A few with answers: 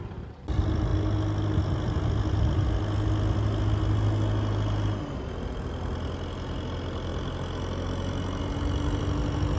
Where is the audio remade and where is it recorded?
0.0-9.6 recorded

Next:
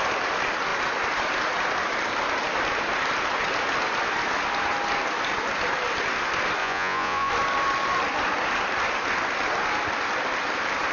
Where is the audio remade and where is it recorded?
0.0-6.6 recorded; 6.6-7.3 remade; 7.3-10.9 recorded

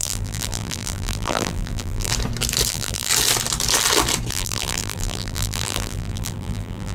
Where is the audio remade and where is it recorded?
0.0-2.1 remade; 2.1-2.7 recorded; 2.7-3.1 remade; 3.1-4.3 recorded; 4.3-6.9 remade